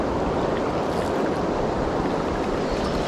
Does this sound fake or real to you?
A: real